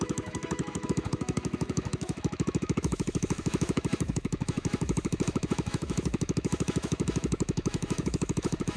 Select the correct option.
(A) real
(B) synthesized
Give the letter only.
B